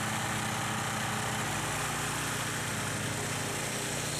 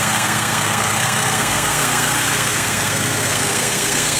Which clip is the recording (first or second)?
first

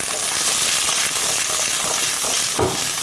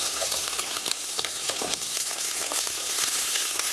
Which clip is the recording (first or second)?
first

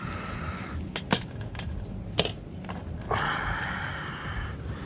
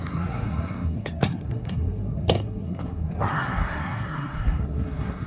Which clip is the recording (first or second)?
first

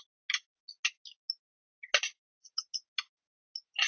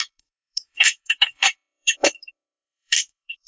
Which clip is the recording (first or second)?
first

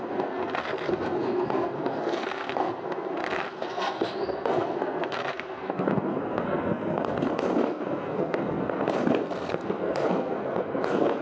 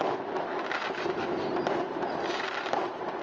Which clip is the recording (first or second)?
second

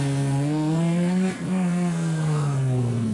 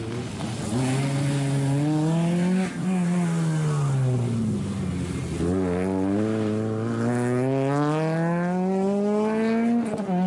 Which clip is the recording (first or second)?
second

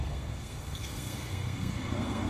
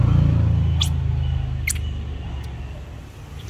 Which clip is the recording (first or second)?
second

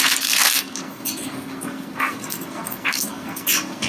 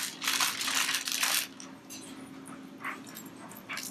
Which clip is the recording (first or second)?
second